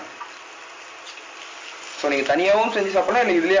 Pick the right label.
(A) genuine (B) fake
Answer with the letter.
A